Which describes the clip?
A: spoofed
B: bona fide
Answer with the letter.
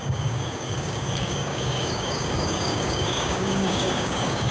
A